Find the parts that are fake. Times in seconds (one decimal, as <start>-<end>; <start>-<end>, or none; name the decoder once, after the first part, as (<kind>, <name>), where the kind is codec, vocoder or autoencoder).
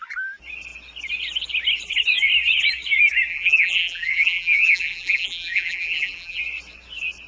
3.3-6.4 (vocoder, BigVGAN v2)